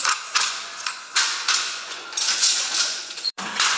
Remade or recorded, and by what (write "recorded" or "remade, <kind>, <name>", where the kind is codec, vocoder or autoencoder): remade, vocoder, Vocos